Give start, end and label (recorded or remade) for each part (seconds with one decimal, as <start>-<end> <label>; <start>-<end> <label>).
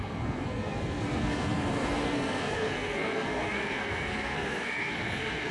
0.0-5.5 remade